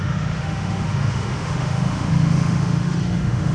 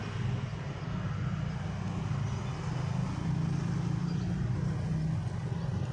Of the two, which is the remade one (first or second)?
first